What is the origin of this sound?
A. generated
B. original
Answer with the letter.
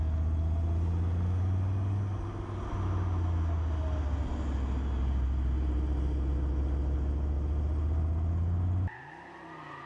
B